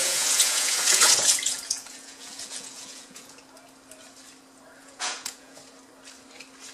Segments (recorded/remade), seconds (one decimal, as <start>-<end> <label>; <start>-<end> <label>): 0.0-3.4 remade; 3.4-4.8 recorded; 4.8-5.6 remade; 5.6-6.7 recorded